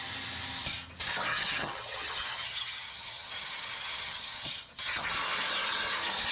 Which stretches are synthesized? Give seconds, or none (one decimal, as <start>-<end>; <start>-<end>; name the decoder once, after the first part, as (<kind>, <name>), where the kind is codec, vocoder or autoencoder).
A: 1.3-5.1 (vocoder, HiFi-GAN)